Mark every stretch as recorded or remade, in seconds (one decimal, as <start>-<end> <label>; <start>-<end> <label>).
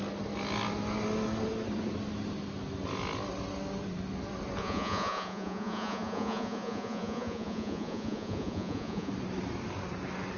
0.0-4.6 recorded; 4.6-9.1 remade; 9.1-10.4 recorded